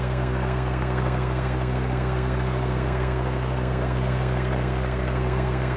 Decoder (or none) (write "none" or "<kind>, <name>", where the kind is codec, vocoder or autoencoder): codec, SNAC